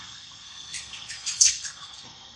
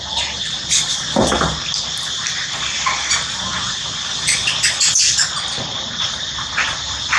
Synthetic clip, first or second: first